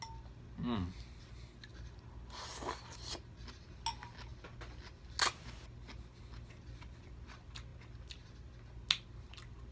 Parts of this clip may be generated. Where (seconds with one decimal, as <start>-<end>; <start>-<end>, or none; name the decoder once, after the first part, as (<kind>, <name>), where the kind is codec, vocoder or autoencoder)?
none